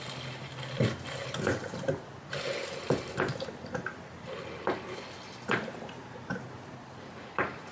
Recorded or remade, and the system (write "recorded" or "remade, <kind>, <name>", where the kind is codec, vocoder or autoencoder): recorded